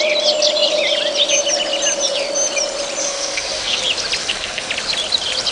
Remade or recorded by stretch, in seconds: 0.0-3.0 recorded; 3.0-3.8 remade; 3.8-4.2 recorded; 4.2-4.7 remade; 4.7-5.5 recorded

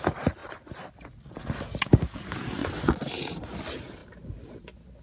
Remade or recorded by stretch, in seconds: 0.0-2.6 recorded; 2.6-3.1 remade; 3.1-5.0 recorded

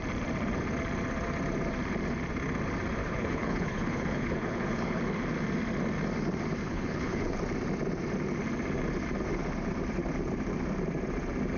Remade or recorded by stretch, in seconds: 0.0-3.0 recorded; 3.0-5.0 remade; 5.0-6.6 recorded; 6.6-7.4 remade; 7.4-11.6 recorded

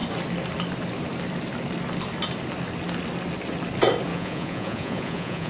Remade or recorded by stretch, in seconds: 0.0-4.1 recorded; 4.1-5.5 remade

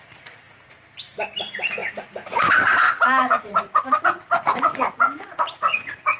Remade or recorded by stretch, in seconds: 0.0-0.7 remade; 0.7-1.4 recorded; 1.4-6.2 remade